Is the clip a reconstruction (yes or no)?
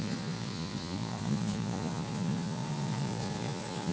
yes